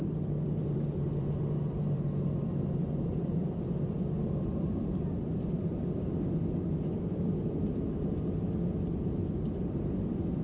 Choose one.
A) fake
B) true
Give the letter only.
A